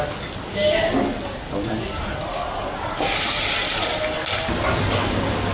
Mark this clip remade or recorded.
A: recorded